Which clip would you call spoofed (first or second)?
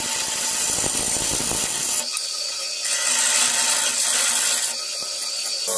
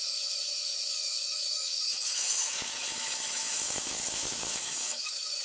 second